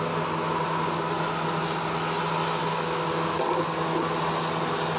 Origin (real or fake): real